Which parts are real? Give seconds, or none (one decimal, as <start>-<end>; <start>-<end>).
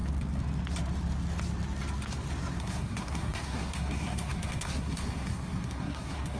0.0-2.6